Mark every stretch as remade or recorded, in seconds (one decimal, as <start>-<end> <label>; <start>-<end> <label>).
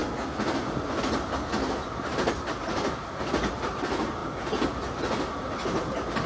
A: 0.0-6.3 recorded